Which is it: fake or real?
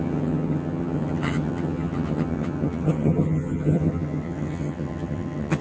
fake